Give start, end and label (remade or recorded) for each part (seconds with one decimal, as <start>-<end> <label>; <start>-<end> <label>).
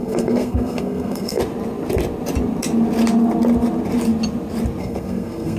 0.0-1.4 remade; 1.4-4.8 recorded; 4.8-5.6 remade